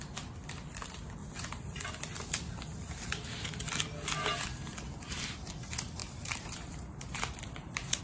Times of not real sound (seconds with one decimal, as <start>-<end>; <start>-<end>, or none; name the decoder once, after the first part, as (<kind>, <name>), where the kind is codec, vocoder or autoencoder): 6.0-8.0 (vocoder, BigVGAN v2)